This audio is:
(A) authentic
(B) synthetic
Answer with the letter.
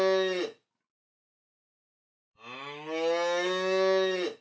A